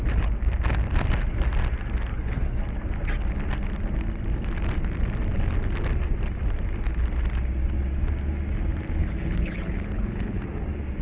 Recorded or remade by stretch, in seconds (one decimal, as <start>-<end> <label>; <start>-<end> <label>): 0.0-2.1 recorded; 2.1-2.6 remade; 2.6-9.0 recorded; 9.0-10.4 remade; 10.4-11.0 recorded

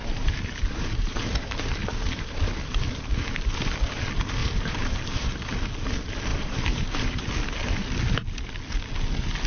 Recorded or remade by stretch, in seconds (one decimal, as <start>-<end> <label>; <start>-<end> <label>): 0.0-2.7 remade; 2.7-4.4 recorded; 4.4-5.7 remade; 5.7-6.3 recorded; 6.3-7.4 remade; 7.4-9.5 recorded